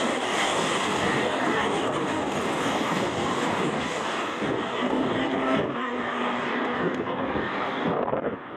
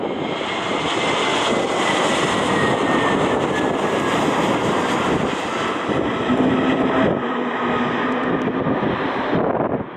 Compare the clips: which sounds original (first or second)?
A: second